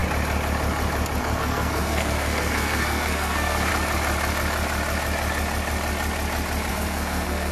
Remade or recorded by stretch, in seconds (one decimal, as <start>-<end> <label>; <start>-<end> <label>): 0.0-1.2 recorded; 1.2-3.7 remade; 3.7-6.7 recorded; 6.7-7.5 remade

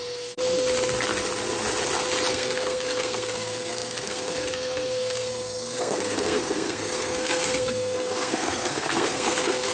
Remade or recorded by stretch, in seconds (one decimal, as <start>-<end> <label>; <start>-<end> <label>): 0.0-0.4 remade; 0.4-2.3 recorded; 2.3-9.7 remade

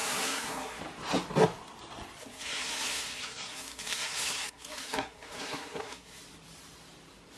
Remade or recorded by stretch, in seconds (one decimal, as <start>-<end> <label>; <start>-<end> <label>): 0.0-0.8 remade; 0.8-2.2 recorded; 2.2-6.2 remade; 6.2-7.4 recorded

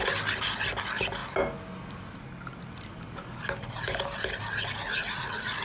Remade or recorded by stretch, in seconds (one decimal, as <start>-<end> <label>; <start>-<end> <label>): 0.0-5.6 recorded

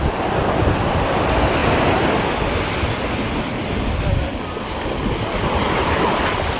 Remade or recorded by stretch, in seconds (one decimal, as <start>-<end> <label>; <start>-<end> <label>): 0.0-6.6 recorded

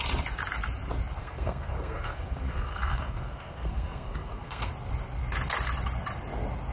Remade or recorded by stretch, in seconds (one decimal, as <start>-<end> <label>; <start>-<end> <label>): 0.0-1.2 recorded; 1.2-4.7 remade; 4.7-6.7 recorded

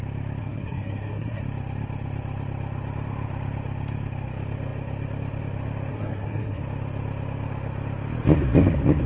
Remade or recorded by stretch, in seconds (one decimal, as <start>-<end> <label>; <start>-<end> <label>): 0.0-0.4 recorded; 0.4-1.4 remade; 1.4-5.9 recorded; 5.9-6.6 remade; 6.6-9.1 recorded